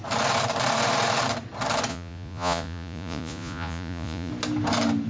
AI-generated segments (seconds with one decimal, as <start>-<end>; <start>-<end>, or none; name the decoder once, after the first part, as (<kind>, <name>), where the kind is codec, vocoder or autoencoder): 1.9-4.3 (vocoder, Vocos)